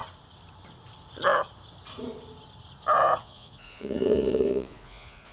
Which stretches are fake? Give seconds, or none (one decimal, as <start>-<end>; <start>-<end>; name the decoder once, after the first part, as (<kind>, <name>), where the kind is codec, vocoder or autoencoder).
3.2-5.3 (vocoder, Vocos)